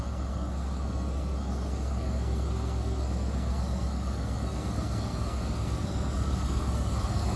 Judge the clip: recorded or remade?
remade